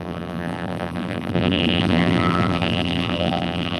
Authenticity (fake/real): fake